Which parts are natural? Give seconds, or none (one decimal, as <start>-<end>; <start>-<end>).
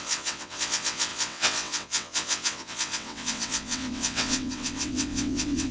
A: none